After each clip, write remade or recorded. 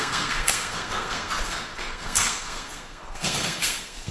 remade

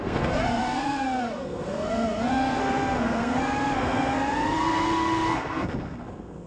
remade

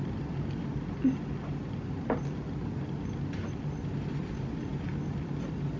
recorded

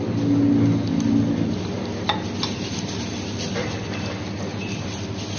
recorded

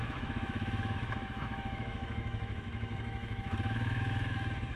remade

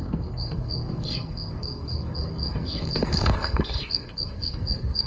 remade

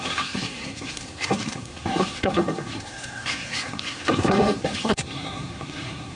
remade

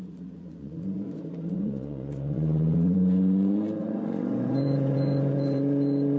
remade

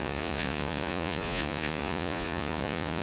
remade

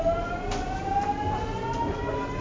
recorded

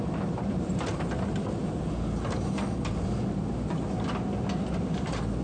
recorded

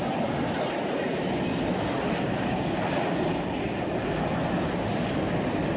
recorded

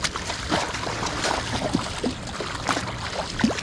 recorded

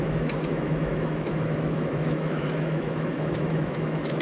remade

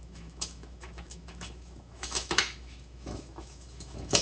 remade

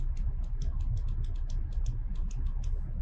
recorded